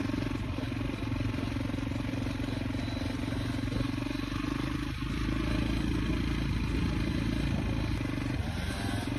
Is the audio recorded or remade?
recorded